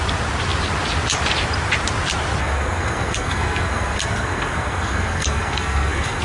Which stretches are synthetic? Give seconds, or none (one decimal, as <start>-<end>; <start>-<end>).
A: 2.4-6.2